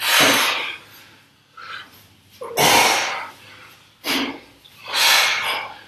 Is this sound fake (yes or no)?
no